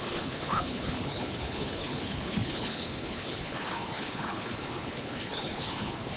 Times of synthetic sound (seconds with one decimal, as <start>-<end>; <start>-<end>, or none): 0.0-6.2